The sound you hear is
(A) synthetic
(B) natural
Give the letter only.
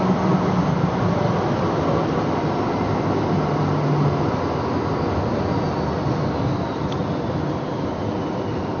B